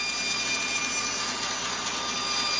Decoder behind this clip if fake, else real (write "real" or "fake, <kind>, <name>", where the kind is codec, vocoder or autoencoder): real